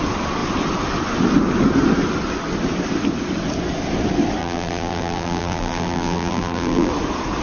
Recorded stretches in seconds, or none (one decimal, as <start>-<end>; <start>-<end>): 0.0-4.4; 6.9-7.4